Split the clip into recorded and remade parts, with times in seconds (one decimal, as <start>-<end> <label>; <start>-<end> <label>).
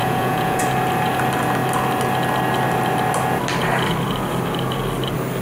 0.0-0.6 remade; 0.6-5.4 recorded